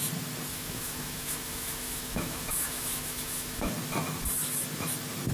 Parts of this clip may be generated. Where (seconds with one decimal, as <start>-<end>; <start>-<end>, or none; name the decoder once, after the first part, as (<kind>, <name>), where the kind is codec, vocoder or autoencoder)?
0.5-3.7 (autoencoder, DAC-VAE)